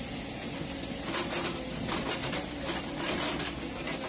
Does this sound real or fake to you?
real